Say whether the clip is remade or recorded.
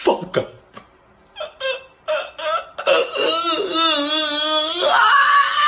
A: recorded